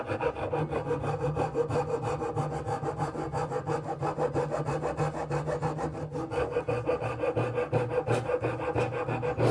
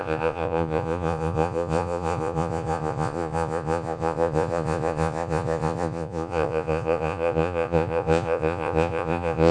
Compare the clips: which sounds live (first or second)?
first